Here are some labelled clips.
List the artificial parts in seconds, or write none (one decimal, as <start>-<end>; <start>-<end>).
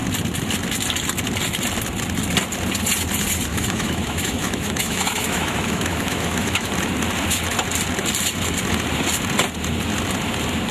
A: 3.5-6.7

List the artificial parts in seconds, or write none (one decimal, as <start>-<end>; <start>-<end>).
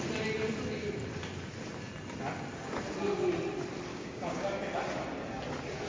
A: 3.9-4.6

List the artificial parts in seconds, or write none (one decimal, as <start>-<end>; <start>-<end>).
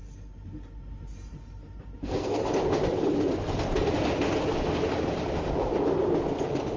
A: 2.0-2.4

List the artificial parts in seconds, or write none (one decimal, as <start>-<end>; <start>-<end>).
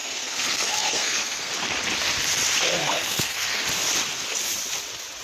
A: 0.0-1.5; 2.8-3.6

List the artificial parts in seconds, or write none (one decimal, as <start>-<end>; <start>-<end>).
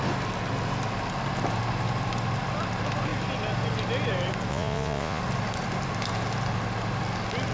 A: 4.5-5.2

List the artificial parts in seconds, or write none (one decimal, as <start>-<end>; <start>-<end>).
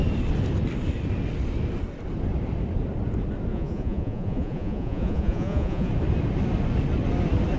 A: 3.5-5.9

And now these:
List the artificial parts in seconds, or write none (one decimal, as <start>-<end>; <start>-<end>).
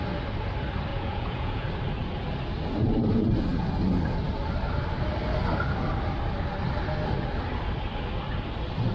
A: 0.9-1.7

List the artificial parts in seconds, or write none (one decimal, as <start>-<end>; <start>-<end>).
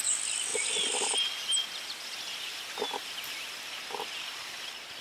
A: none